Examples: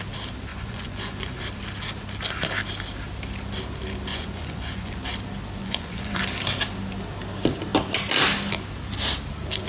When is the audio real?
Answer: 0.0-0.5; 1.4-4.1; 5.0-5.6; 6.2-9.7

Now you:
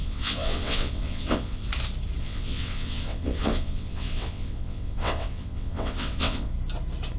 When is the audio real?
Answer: 1.7-2.2; 6.5-7.2

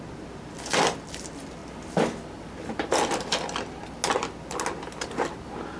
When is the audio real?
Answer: 0.0-5.8

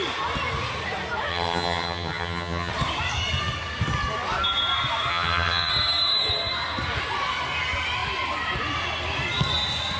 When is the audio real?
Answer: 0.0-1.3; 2.7-5.1; 5.7-10.0

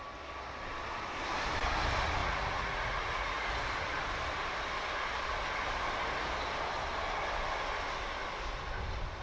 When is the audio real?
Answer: 0.0-2.2; 3.5-9.2

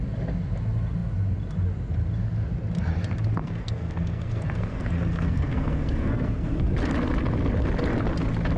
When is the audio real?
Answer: 0.0-3.4; 6.6-8.6